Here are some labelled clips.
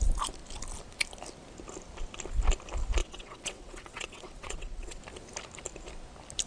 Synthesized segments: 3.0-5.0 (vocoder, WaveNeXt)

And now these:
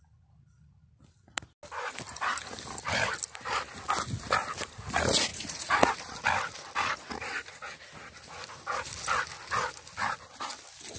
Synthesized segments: 5.3-5.9 (vocoder, Vocos)

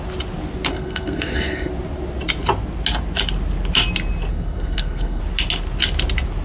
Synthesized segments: 0.7-1.7 (codec, SNAC); 4.3-5.2

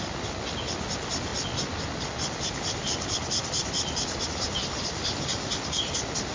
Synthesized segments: none

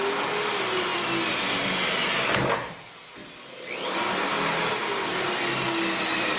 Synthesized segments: none

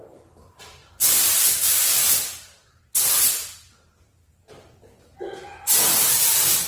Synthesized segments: 0.0-0.8 (vocoder, BigVGAN v2); 1.3-2.0; 5.8-6.7

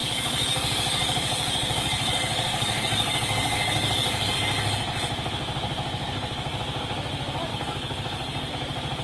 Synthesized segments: 0.0-4.3 (codec, DAC); 7.5-8.5

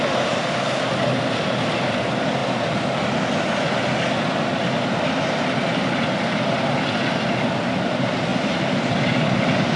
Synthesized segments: none